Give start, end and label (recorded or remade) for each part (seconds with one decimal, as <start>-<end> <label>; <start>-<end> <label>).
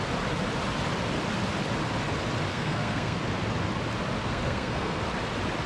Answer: 0.0-2.5 recorded; 2.5-3.2 remade; 3.2-4.2 recorded; 4.2-5.0 remade; 5.0-5.7 recorded